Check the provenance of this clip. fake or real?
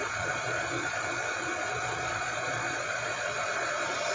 fake